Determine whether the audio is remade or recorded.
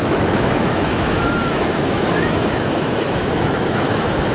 remade